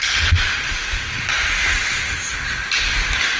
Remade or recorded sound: recorded